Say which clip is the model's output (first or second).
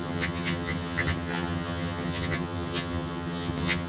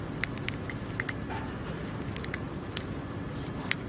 first